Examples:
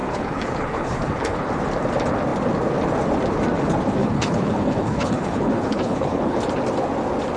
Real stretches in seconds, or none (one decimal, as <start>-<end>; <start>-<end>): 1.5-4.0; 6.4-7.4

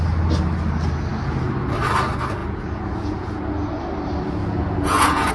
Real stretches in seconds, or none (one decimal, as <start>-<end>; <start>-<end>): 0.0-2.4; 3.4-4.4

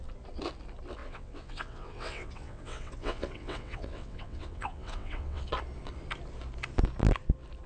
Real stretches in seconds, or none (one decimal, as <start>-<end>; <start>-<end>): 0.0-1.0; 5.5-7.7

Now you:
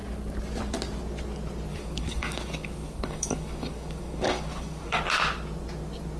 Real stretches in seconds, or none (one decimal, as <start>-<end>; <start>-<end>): 0.0-1.7; 5.0-6.2

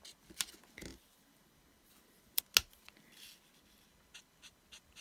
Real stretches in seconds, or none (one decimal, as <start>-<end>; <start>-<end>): 0.0-0.9; 2.4-5.0

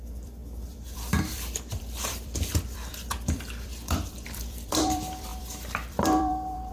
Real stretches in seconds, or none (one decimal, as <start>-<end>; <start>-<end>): none